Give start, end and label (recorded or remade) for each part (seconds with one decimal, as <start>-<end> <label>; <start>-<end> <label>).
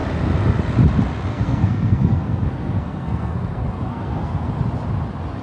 0.0-1.3 recorded; 1.3-4.5 remade; 4.5-5.4 recorded